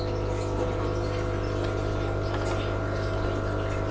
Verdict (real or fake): real